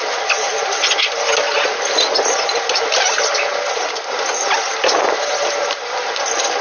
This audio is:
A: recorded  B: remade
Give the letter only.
A